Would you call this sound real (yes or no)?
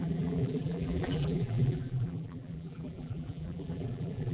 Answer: no